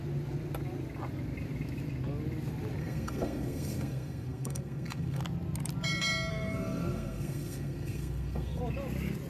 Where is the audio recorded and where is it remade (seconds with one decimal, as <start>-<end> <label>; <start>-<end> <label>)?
0.0-2.8 recorded; 2.8-5.2 remade; 5.2-6.3 recorded; 6.3-8.6 remade; 8.6-9.3 recorded